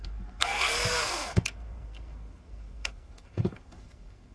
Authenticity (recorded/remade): remade